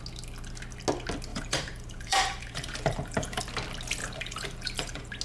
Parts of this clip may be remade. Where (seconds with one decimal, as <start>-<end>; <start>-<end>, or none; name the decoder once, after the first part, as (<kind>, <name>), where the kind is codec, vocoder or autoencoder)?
1.3-3.4 (vocoder, BigVGAN v2); 4.0-5.2